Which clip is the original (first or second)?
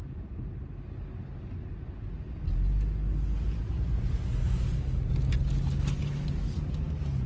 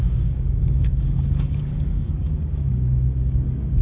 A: first